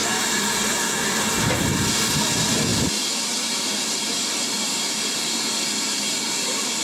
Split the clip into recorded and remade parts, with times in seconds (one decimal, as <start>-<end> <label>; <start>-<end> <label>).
0.0-2.7 recorded; 2.7-5.3 remade; 5.3-6.8 recorded